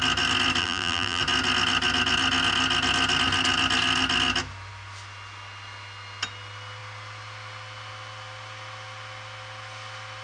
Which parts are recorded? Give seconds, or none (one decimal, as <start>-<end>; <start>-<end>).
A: 0.0-0.6; 1.2-10.2